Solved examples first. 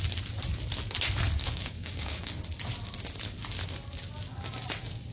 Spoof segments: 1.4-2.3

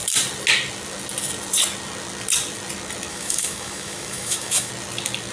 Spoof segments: 3.1-4.7

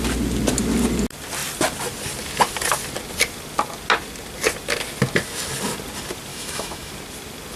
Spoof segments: 6.3-6.9

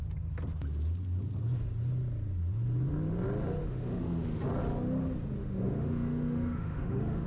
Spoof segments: 3.6-4.4; 5.4-7.3

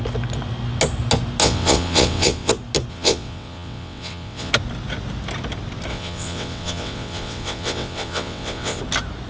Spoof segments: 1.4-2.5; 2.9-4.5; 5.9-8.8

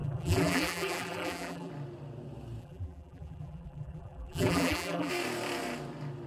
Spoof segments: 0.0-1.7; 2.6-5.1